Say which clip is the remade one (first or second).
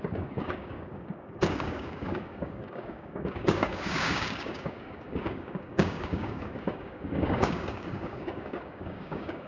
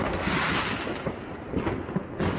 first